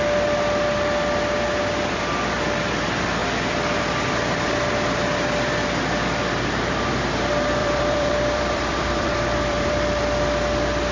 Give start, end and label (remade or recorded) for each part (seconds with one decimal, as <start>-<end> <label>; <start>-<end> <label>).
0.0-7.6 recorded; 7.6-10.0 remade; 10.0-10.9 recorded